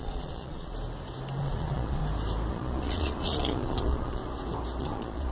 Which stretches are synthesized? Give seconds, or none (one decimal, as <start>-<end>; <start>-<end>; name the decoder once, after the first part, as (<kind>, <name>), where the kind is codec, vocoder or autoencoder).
0.0-0.7 (vocoder, Vocos); 1.4-2.0; 2.5-4.2; 4.8-5.3